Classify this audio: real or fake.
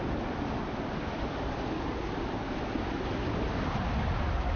real